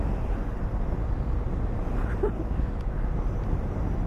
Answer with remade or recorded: recorded